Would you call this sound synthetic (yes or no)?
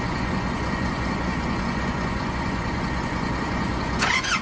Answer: yes